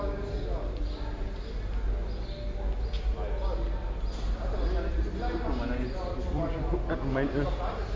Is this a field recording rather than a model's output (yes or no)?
yes